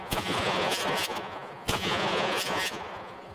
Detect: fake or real fake